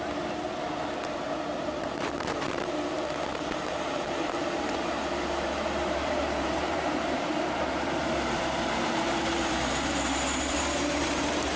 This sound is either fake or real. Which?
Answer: fake